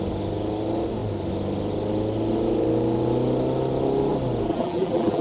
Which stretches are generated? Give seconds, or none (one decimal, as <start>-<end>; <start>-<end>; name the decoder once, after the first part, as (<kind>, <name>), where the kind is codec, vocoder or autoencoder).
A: 4.5-5.2 (vocoder, BigVGAN v2)